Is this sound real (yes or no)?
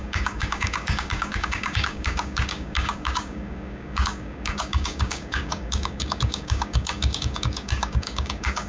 no